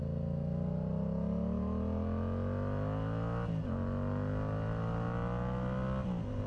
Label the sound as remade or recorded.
recorded